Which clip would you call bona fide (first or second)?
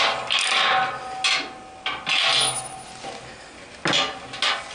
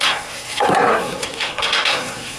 first